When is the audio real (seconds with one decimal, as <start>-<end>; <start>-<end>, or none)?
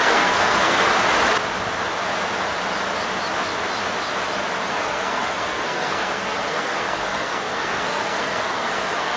0.9-4.7